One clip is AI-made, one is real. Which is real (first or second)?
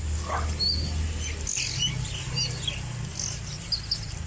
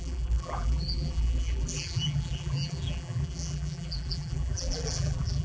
first